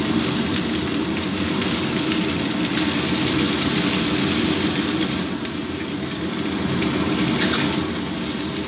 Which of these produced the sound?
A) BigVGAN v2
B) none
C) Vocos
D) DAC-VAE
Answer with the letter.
B